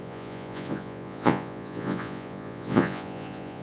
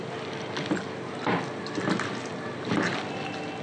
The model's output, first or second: first